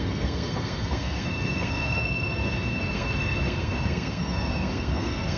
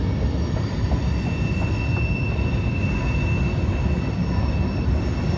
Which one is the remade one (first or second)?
first